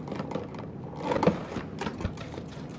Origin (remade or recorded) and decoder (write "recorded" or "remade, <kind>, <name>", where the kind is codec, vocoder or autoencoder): recorded